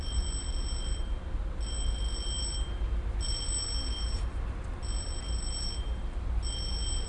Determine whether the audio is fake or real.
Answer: real